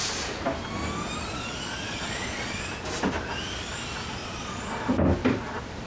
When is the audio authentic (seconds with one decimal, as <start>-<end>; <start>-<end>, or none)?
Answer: 0.0-1.3; 2.7-4.2; 4.8-5.9

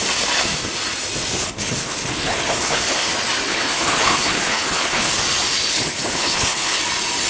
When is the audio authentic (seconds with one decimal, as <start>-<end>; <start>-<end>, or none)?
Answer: 0.0-1.4; 3.1-3.5; 5.1-5.7; 6.8-7.3

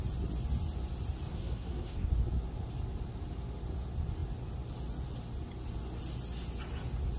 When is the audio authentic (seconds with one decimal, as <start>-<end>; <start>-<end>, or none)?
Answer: 0.0-1.3; 2.1-7.2

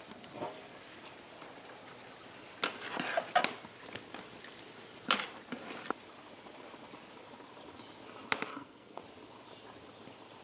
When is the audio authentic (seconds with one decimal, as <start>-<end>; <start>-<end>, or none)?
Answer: 0.0-8.5; 9.0-10.4

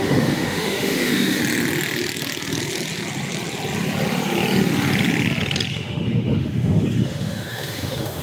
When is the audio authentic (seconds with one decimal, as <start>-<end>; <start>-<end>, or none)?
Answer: 1.4-5.7

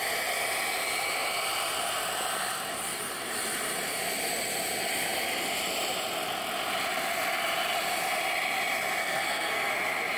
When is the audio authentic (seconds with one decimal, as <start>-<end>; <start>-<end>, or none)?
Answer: 0.0-9.0; 9.7-10.2

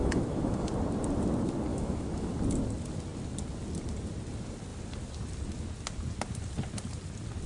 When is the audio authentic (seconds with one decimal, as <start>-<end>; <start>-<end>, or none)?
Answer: 0.7-1.7; 2.3-7.5

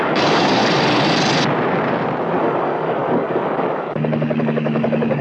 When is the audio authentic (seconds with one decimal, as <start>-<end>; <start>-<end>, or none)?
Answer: 0.6-2.4